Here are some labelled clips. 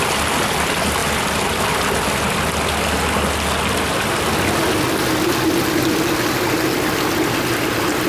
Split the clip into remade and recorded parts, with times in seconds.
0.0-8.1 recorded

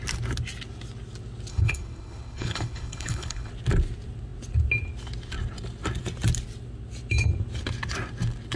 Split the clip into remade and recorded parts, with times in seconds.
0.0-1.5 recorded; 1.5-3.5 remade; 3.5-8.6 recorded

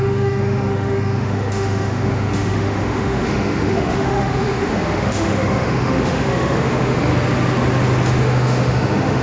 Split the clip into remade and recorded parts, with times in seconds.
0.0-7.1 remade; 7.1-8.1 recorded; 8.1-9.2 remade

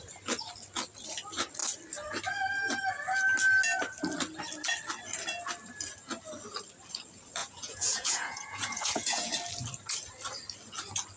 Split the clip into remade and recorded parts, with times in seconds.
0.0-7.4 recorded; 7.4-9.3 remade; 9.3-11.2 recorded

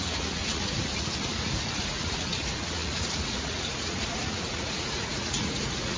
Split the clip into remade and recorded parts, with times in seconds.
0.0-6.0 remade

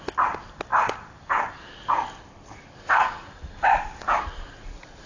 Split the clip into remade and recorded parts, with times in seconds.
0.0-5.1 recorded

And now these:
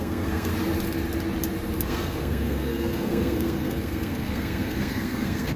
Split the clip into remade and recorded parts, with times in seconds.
0.0-0.5 remade; 0.5-1.8 recorded; 1.8-5.6 remade

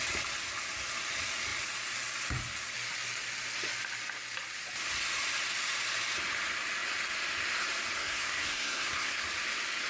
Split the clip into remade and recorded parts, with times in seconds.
0.0-8.0 recorded; 8.0-9.2 remade; 9.2-9.9 recorded